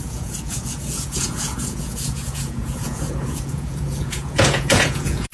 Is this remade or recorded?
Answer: remade